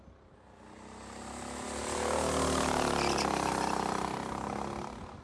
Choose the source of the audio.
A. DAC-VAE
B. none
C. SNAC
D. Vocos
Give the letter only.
B